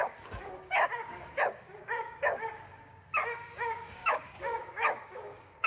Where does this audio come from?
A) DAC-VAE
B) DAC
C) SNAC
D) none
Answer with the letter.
B